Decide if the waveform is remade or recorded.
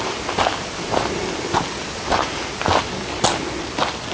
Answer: recorded